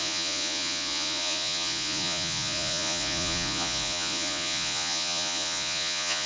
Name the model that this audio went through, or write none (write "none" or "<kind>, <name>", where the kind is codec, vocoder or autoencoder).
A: vocoder, Vocos